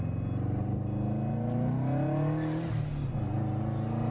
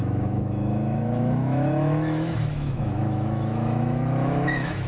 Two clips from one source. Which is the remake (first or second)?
second